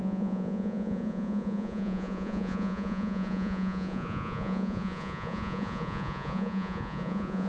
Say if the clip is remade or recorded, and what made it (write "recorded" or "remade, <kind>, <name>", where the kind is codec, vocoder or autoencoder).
remade, vocoder, Vocos